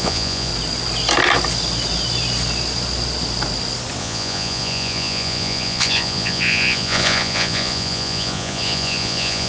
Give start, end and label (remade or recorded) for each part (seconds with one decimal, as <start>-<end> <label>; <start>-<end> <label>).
0.0-0.5 remade; 0.5-4.0 recorded; 4.0-9.5 remade